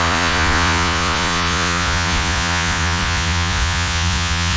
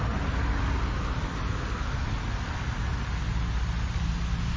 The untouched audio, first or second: second